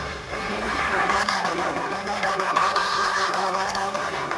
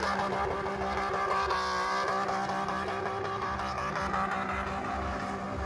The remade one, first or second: first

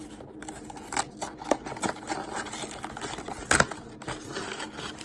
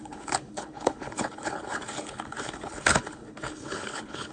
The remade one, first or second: second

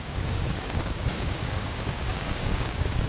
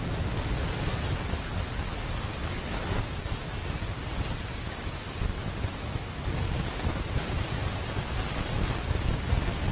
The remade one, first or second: first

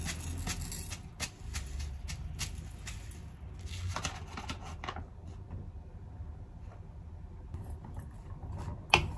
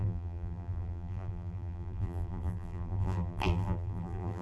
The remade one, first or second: second